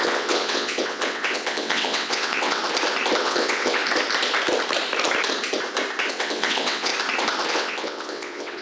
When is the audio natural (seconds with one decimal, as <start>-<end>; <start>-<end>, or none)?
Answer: 2.6-3.2; 3.8-6.1; 6.9-7.5